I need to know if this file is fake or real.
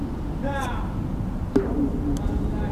real